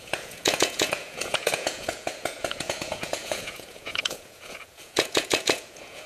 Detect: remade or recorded remade